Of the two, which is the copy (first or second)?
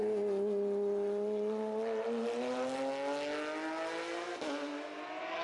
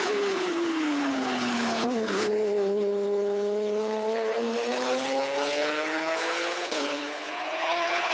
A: second